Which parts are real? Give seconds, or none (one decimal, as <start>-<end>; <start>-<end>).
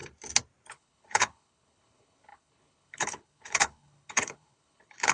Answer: 0.0-0.7